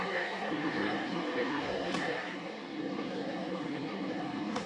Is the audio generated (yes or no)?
yes